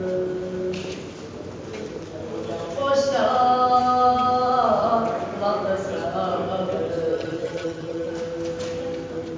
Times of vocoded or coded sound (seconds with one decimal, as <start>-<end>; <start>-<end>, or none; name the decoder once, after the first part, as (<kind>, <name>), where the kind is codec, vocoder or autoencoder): 7.1-8.1 (vocoder, HiFi-GAN)